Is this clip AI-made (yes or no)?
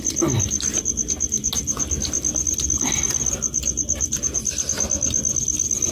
no